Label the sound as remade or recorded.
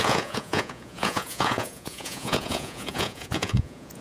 remade